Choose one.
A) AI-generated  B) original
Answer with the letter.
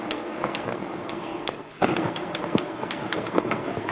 A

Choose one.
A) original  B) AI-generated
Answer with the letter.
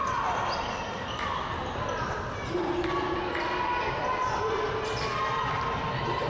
A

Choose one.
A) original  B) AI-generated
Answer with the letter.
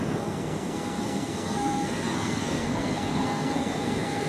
B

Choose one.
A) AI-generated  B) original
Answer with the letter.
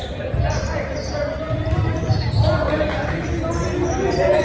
B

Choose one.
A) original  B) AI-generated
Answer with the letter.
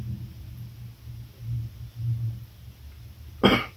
A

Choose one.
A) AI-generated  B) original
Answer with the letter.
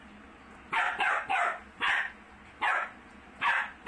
B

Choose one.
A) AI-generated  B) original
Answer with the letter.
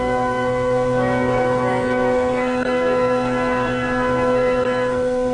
A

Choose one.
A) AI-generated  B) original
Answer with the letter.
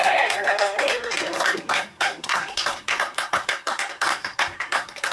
A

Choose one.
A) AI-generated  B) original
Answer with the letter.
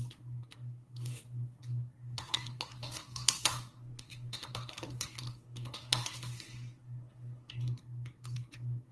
A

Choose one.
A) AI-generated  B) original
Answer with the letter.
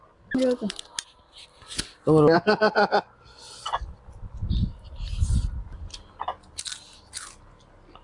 B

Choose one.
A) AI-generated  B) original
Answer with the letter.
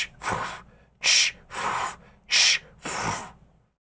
B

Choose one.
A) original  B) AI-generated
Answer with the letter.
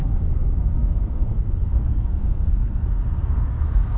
B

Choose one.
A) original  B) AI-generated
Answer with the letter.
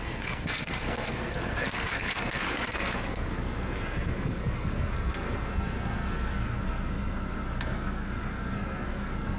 B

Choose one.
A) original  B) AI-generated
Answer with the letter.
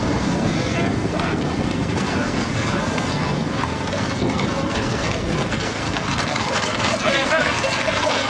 B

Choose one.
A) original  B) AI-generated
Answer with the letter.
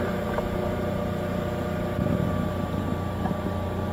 A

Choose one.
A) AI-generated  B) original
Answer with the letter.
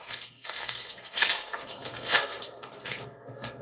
A